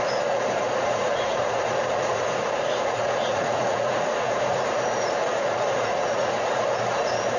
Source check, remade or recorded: remade